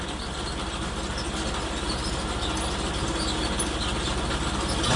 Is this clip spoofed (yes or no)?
no